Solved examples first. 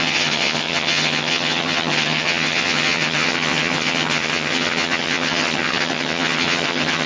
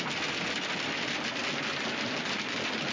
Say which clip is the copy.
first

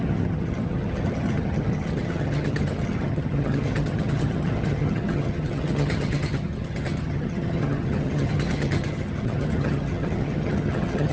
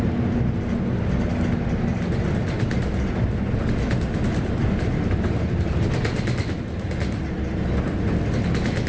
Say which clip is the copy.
first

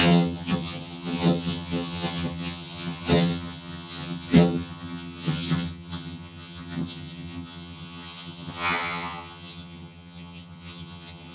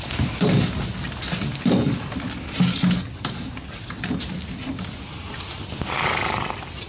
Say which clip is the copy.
first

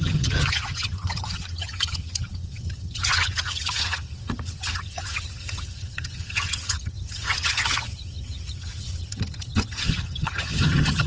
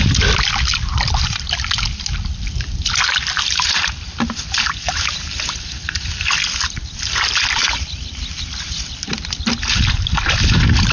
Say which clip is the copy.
first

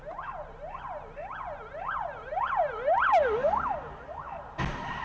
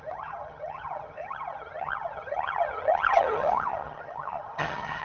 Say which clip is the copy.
second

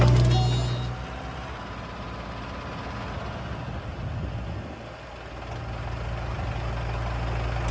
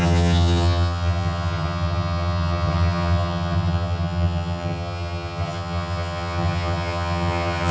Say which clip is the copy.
second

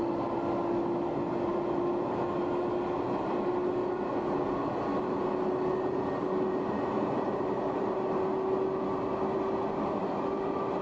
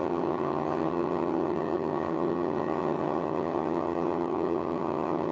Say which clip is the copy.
second